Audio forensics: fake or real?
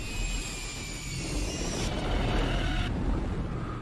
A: real